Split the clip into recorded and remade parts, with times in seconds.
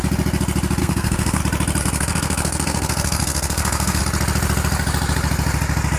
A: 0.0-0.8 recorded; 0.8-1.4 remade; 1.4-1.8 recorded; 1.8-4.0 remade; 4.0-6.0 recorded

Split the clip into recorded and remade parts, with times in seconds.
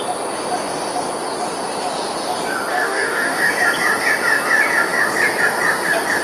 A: 0.0-2.7 recorded; 2.7-3.5 remade; 3.5-6.2 recorded